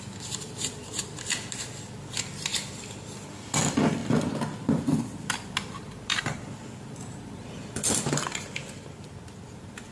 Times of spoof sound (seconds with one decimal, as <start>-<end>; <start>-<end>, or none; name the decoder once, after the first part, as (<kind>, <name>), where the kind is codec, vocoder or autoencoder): none